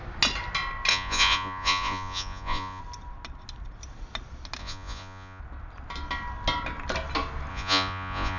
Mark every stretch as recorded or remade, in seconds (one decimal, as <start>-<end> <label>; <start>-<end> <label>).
0.0-0.9 recorded; 0.9-2.8 remade; 2.8-4.6 recorded; 4.6-5.4 remade; 5.4-7.5 recorded; 7.5-8.4 remade